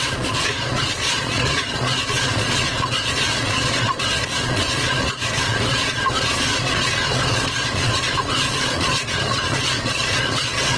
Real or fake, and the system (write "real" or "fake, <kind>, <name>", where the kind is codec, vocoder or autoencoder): fake, vocoder, Vocos